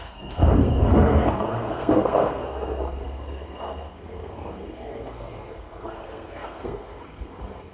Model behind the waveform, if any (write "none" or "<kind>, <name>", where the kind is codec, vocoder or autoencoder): codec, SNAC